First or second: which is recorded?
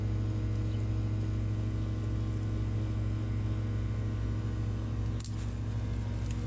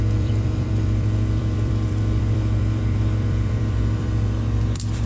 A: first